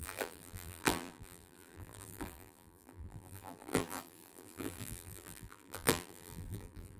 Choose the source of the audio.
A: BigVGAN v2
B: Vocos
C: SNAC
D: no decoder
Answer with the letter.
A